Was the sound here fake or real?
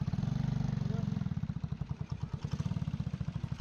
real